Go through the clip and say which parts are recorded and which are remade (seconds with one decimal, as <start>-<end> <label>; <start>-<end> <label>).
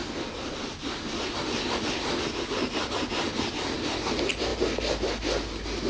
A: 0.0-5.9 recorded